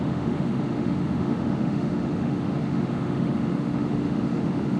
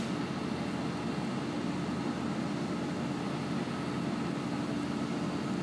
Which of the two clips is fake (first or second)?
first